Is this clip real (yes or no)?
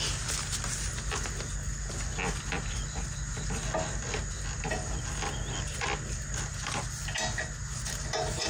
yes